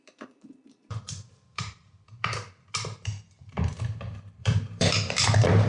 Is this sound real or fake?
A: fake